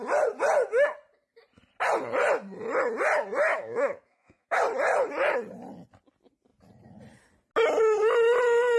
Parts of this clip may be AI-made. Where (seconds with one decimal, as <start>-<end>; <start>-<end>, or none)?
3.5-4.6